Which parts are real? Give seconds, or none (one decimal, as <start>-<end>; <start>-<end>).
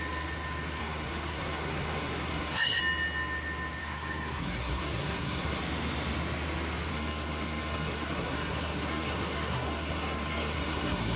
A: 0.0-0.8; 2.8-3.8; 5.6-6.9